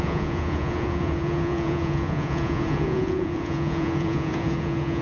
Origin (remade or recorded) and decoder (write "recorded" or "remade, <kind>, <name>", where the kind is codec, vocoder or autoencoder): remade, vocoder, Vocos